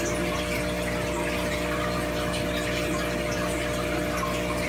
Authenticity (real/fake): real